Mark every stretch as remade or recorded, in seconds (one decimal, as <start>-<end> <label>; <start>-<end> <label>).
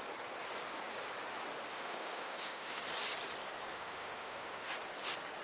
0.0-1.7 recorded; 1.7-2.8 remade; 2.8-3.7 recorded; 3.7-4.7 remade; 4.7-5.4 recorded